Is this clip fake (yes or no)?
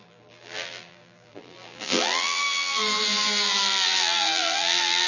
yes